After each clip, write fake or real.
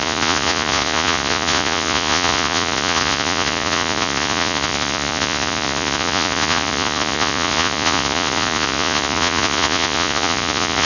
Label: fake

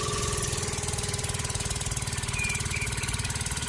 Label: fake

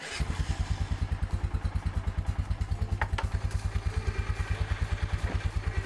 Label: real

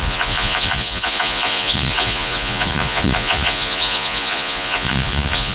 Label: fake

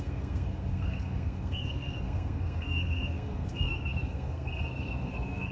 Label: fake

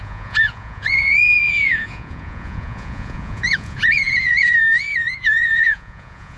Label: fake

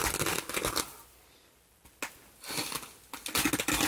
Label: real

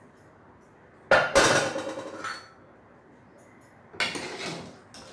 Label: real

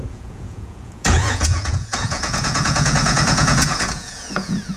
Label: fake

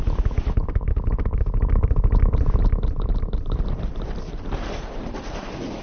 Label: real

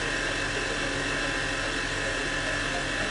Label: real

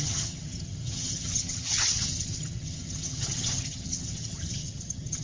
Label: fake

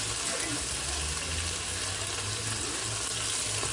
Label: real